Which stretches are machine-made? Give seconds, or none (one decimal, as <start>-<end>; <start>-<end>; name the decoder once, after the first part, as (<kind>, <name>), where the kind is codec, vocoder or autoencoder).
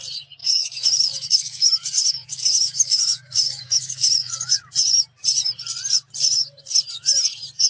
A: 0.4-4.6 (autoencoder, DAC-VAE)